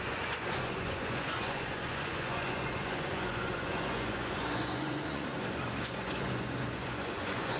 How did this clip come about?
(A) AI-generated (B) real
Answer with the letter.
A